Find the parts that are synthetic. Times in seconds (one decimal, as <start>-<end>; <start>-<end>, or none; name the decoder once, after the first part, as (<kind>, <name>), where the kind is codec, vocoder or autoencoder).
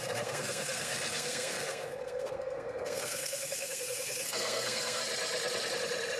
0.0-5.0 (codec, SNAC)